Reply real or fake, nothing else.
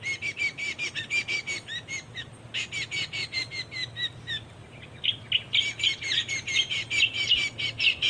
real